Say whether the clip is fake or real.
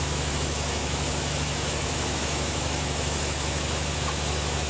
fake